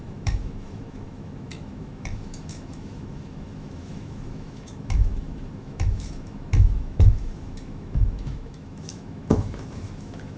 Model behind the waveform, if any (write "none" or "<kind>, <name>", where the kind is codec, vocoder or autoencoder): autoencoder, DAC-VAE